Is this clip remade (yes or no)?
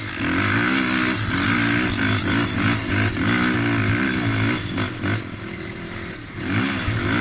no